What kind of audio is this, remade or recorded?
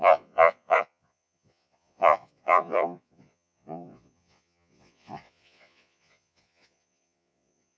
remade